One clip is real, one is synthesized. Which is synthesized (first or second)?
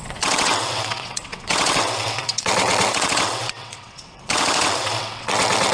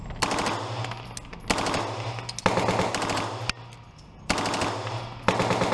first